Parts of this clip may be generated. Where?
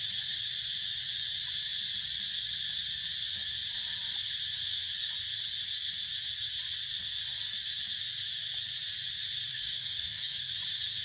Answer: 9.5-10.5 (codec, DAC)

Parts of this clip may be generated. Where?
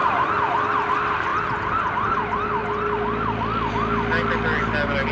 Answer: none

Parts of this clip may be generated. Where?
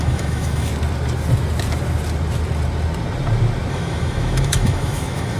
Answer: 0.0-0.7 (autoencoder, DAC-VAE); 3.7-5.4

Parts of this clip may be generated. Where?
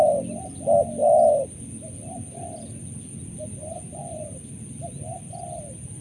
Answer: none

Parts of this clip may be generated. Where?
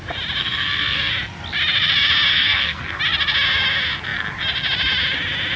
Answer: 0.4-1.1 (codec, SNAC); 2.3-3.0